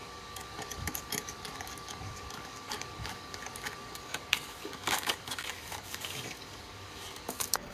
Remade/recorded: remade